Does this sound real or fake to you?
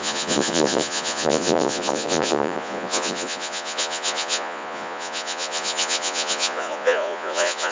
fake